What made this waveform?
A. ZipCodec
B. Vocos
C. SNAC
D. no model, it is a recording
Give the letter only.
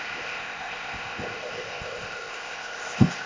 A